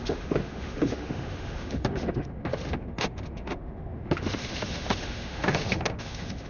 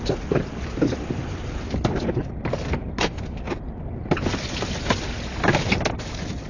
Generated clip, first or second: first